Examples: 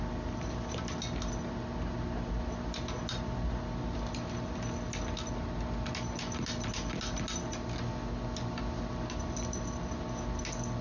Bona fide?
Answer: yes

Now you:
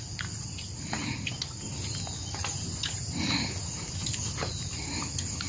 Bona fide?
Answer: yes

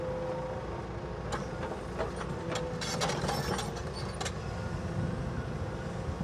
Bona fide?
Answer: yes